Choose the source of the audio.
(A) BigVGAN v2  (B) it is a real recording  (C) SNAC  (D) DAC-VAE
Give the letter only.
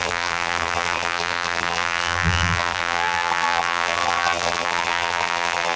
A